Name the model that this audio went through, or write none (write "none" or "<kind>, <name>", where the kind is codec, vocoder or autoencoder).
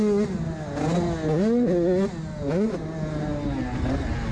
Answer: none